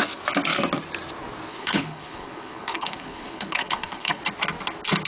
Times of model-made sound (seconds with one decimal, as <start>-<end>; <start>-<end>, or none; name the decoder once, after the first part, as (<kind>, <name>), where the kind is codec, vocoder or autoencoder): 1.5-4.2 (codec, HILCodec)